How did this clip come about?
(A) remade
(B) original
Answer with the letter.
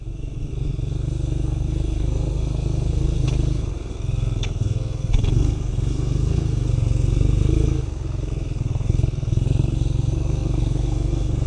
A